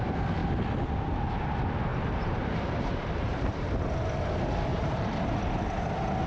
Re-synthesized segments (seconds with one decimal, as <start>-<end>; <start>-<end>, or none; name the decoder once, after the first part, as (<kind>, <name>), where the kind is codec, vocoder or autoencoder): 1.9-3.7 (vocoder, BigVGAN v2); 4.7-5.4